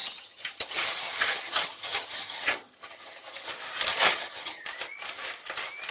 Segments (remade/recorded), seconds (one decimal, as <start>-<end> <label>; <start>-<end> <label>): 0.0-3.5 remade; 3.5-3.9 recorded; 3.9-4.6 remade; 4.6-5.9 recorded